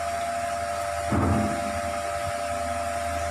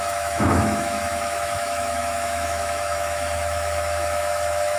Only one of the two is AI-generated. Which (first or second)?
second